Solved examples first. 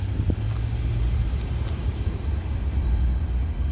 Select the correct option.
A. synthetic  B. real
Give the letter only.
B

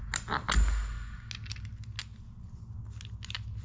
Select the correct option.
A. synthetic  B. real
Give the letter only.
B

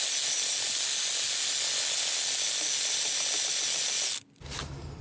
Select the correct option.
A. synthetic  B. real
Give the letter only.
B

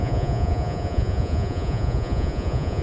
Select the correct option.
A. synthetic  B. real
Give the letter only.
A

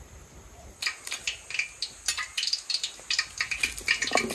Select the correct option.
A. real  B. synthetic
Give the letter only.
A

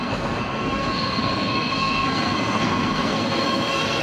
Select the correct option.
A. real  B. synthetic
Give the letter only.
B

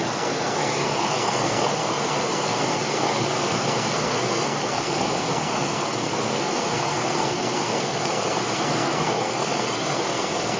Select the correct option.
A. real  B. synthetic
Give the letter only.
B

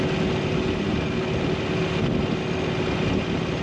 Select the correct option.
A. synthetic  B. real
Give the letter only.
B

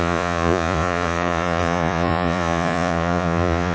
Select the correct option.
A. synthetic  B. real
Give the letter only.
A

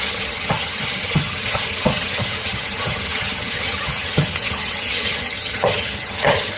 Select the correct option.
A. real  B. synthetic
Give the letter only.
B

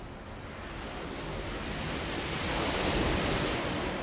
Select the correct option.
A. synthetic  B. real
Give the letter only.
B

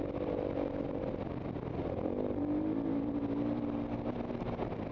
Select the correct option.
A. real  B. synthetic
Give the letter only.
A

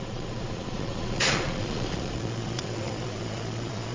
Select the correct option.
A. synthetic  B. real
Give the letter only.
A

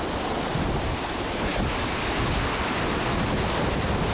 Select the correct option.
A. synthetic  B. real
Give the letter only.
B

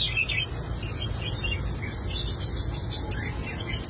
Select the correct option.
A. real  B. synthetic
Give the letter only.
A